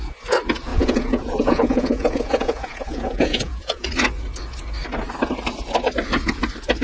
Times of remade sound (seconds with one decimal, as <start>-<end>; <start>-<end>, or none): 0.7-3.9